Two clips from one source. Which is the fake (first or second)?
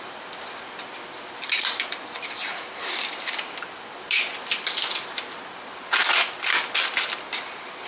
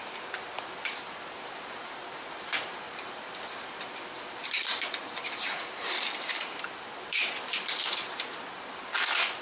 second